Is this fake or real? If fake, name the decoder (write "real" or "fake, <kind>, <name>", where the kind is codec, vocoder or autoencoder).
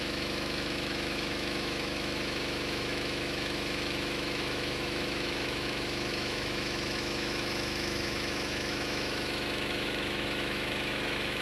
fake, autoencoder, DAC-VAE